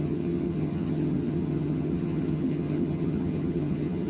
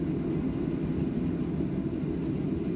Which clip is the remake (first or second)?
first